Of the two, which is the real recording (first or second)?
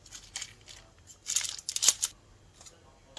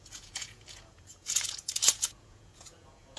first